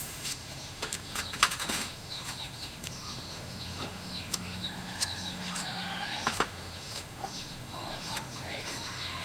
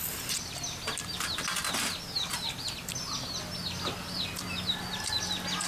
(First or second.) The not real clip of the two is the first